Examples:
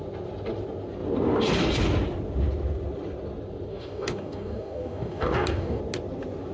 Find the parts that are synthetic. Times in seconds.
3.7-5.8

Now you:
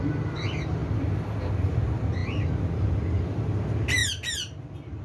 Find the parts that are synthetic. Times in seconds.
none

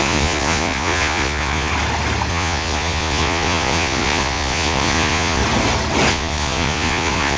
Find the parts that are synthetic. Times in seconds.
0.0-1.7; 2.3-5.4; 6.1-7.4